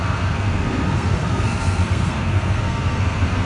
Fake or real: fake